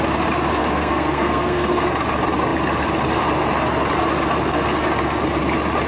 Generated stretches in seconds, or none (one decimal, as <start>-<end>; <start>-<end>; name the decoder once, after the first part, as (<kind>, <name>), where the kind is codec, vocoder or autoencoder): 0.6-1.7 (codec, SNAC)